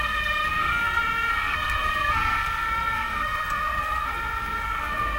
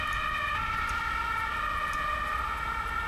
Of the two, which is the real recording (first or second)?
second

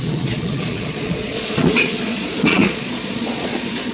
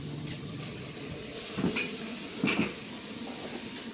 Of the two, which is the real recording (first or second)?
second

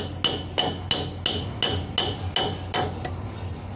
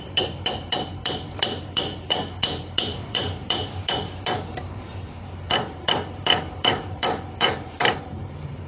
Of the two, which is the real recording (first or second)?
first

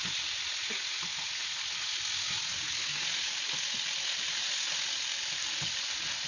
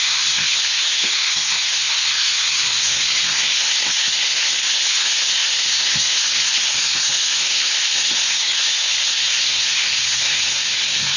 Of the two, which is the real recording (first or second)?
first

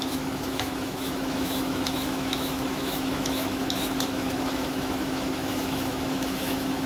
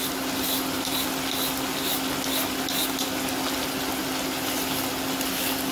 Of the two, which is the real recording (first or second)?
second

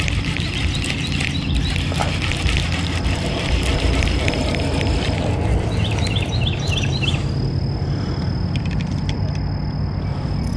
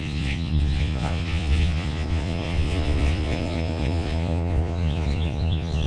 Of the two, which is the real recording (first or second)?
first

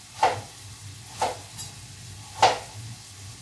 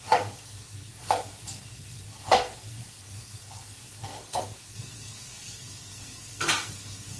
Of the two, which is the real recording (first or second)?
first